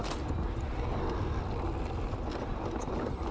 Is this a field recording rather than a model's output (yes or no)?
yes